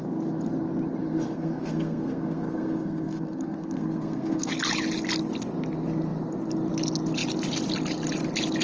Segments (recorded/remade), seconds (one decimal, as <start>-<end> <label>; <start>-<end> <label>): 0.0-1.0 recorded; 1.0-4.5 remade; 4.5-8.6 recorded

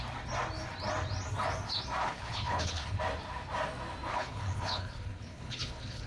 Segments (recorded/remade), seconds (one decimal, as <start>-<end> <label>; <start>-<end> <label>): 0.0-2.0 recorded; 2.0-3.0 remade; 3.0-4.1 recorded; 4.1-6.1 remade

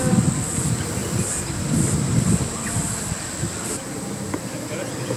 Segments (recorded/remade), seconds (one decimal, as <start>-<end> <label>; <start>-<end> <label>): 0.0-1.0 recorded; 1.0-4.1 remade; 4.1-5.2 recorded

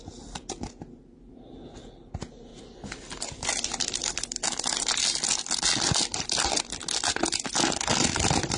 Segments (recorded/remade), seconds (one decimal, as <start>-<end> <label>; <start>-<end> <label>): 0.0-8.6 recorded

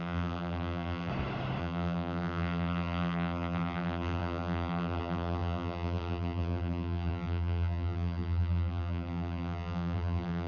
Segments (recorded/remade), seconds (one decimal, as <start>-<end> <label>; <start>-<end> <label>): 0.0-1.1 remade; 1.1-1.6 recorded; 1.6-10.5 remade

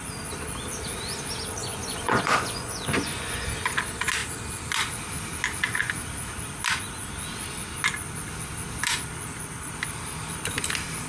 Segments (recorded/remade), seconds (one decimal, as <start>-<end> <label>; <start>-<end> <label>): 0.0-1.6 recorded; 1.6-3.5 remade; 3.5-11.1 recorded

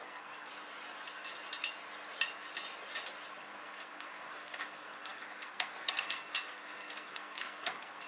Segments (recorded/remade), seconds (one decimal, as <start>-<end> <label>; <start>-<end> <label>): 0.0-0.5 remade; 0.5-3.4 recorded; 3.4-8.1 remade

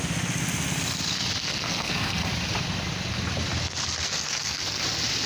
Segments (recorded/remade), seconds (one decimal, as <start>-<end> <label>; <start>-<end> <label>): 0.0-1.4 recorded; 1.4-2.3 remade; 2.3-4.0 recorded; 4.0-4.8 remade; 4.8-5.3 recorded